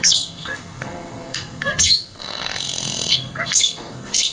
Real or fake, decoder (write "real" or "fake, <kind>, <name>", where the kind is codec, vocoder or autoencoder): fake, codec, SNAC